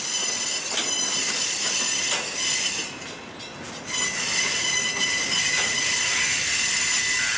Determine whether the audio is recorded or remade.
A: recorded